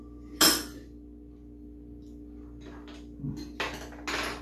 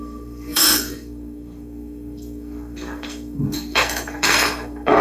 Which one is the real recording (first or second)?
first